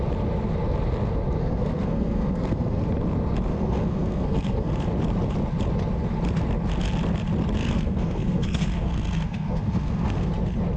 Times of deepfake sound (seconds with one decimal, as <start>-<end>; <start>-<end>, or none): 1.4-2.8; 3.5-4.7; 7.6-10.3